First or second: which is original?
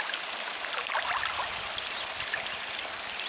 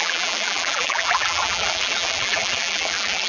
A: first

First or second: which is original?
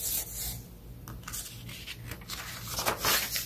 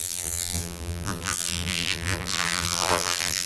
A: first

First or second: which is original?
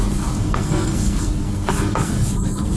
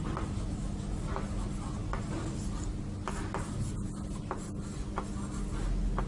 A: second